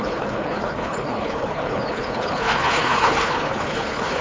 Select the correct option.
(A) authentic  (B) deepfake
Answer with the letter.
B